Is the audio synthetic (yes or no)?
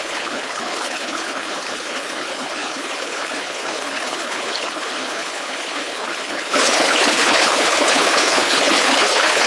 yes